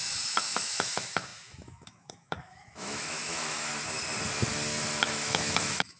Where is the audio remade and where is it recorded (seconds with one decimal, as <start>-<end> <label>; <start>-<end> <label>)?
0.0-3.7 remade; 3.7-5.0 recorded; 5.0-6.0 remade